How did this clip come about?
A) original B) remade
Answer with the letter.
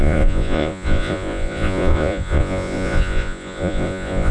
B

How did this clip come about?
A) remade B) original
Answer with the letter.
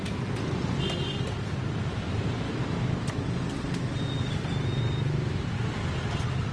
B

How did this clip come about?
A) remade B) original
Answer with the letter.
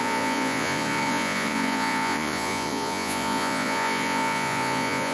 A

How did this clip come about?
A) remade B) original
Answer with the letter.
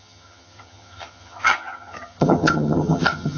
A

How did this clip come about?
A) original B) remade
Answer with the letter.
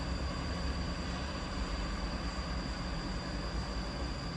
B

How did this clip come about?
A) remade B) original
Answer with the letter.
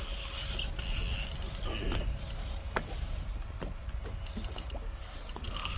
B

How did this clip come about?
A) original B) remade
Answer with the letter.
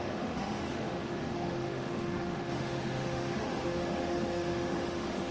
B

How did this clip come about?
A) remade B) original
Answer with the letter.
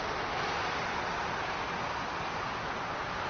B